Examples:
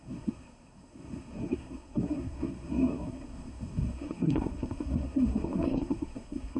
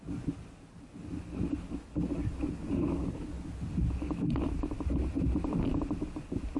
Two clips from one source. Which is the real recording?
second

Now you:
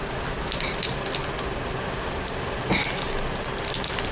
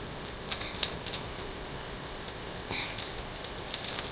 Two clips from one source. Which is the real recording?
first